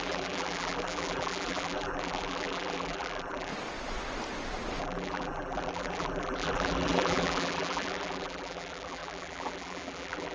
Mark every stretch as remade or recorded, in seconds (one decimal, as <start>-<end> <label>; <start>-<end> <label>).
0.0-3.5 remade; 3.5-4.8 recorded; 4.8-10.3 remade